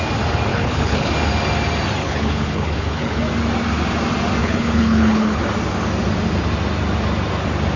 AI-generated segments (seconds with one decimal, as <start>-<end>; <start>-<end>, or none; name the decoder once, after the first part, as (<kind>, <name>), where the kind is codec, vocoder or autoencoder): 0.5-1.1 (codec, HILCodec); 2.0-3.2; 4.4-5.4